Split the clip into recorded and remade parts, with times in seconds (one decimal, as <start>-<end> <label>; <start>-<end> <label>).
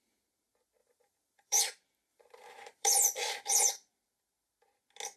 0.0-0.8 recorded; 0.8-1.6 remade; 1.6-2.1 recorded; 2.1-2.9 remade; 2.9-5.2 recorded